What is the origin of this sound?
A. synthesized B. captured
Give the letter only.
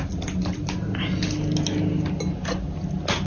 B